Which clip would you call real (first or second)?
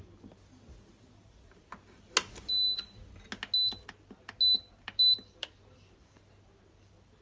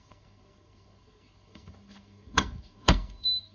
first